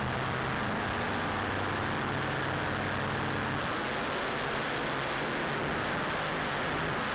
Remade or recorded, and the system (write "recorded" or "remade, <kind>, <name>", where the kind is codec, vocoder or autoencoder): recorded